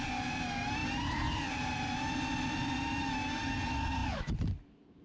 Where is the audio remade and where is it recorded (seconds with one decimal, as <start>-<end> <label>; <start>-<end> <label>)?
0.0-5.0 recorded